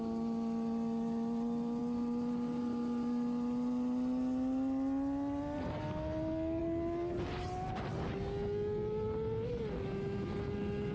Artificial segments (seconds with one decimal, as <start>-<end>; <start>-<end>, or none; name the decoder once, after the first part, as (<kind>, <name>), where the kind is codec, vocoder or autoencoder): none